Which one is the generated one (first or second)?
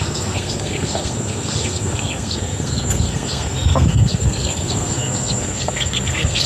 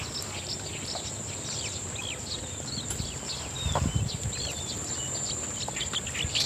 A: first